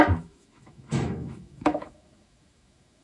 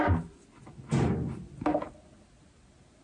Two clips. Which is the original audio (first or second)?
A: second